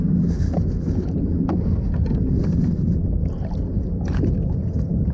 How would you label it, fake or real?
real